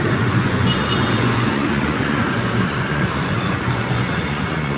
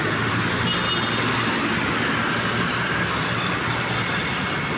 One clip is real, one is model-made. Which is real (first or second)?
second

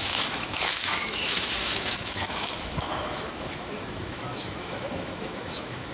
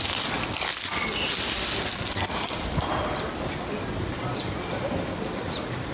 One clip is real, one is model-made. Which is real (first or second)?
second